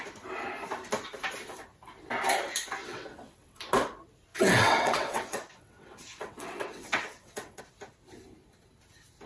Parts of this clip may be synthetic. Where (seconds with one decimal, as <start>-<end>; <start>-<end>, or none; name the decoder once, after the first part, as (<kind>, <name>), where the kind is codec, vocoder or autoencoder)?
2.8-3.6 (vocoder, WaveNeXt); 4.3-7.6